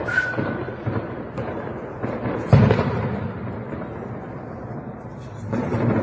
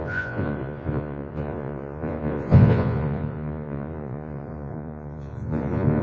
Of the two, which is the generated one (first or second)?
second